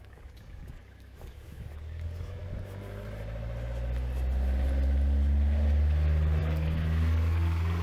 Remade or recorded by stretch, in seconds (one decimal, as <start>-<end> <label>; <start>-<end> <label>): 0.0-2.4 remade; 2.4-6.4 recorded; 6.4-7.8 remade